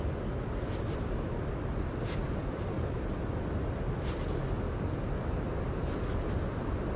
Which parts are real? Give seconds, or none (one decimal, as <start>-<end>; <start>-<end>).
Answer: 0.0-7.0

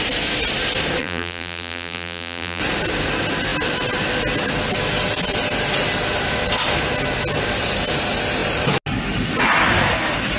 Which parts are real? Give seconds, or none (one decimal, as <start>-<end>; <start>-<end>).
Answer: 0.0-1.0; 2.6-10.4